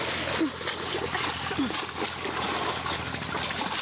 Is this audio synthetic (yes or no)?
no